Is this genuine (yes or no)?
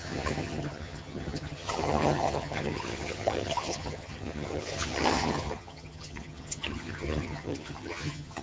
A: no